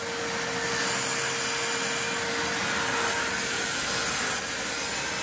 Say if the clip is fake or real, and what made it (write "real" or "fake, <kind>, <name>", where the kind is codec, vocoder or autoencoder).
real